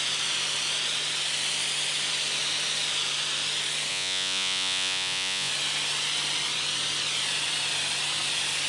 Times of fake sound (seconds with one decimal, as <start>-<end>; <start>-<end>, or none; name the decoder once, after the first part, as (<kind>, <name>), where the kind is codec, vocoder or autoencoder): 3.9-5.5 (vocoder, Vocos)